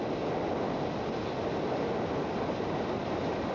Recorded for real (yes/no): yes